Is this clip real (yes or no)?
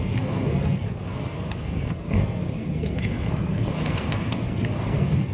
no